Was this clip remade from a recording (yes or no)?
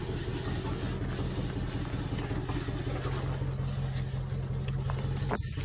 no